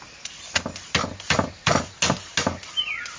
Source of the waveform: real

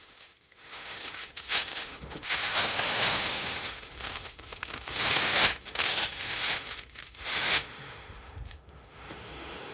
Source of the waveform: fake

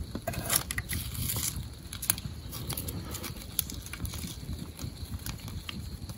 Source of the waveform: real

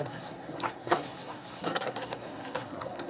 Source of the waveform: fake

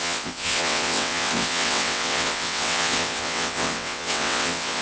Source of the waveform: fake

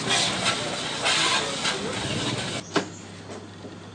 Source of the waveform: real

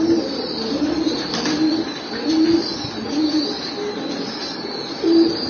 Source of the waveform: real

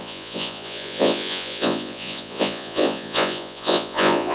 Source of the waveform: fake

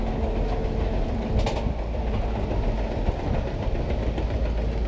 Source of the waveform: real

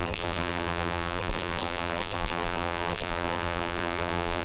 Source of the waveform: fake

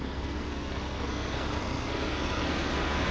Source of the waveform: fake